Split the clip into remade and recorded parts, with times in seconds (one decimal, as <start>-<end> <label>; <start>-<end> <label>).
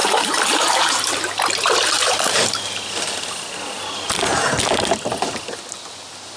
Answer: 0.0-2.4 remade; 2.4-6.4 recorded